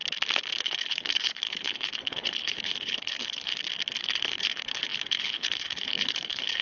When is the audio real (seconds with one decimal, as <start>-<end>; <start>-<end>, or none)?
0.0-0.6; 3.5-4.0